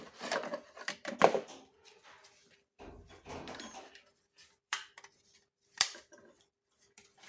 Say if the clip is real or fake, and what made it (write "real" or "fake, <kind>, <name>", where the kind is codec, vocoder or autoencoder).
fake, vocoder, BigVGAN v2